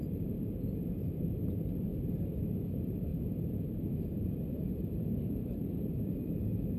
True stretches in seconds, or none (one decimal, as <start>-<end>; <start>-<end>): 1.9-2.7; 3.1-3.6